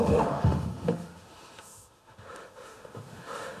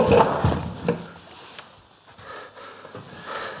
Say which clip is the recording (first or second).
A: second